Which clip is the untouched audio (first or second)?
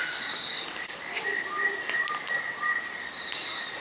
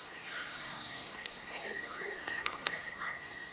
first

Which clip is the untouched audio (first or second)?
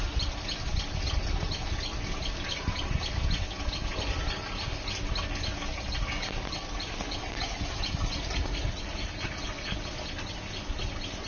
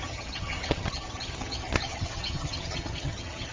first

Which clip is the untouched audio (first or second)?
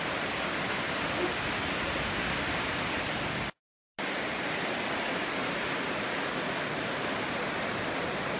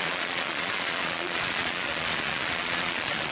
first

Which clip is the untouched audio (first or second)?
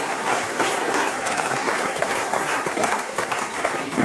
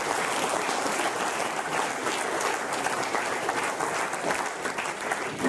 second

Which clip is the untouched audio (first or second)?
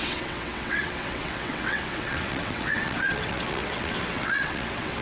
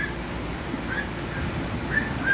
second